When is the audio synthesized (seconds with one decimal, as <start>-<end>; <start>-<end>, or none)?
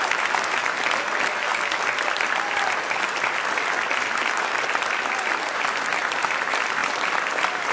1.5-4.3; 6.8-7.7